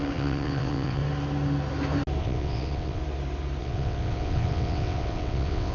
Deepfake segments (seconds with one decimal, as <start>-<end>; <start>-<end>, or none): 0.0-1.0; 2.2-3.0; 3.6-5.7

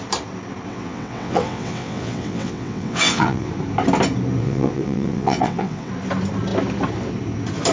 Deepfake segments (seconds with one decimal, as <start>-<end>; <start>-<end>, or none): 0.7-3.5; 4.4-5.9